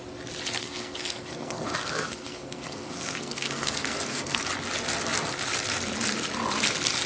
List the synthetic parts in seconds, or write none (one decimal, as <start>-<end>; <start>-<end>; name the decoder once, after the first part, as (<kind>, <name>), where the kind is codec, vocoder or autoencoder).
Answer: 0.6-4.4 (codec, SNAC)